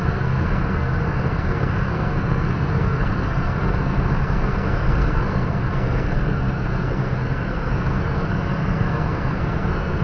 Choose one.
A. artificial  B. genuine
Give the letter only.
A